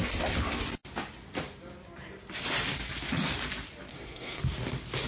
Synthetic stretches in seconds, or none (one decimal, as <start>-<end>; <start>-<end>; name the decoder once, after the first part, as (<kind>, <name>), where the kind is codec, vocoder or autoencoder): 3.9-4.4 (codec, SNAC)